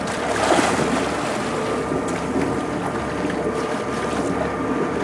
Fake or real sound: real